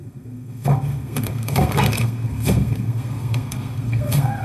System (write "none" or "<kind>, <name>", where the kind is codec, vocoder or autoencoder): codec, SNAC